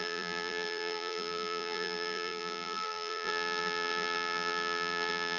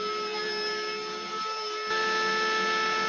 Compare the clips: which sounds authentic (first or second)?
second